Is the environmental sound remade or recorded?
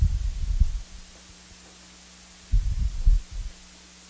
recorded